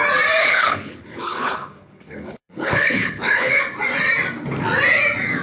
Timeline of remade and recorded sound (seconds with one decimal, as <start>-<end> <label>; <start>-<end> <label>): 0.0-0.4 recorded; 0.4-3.6 remade; 3.6-5.4 recorded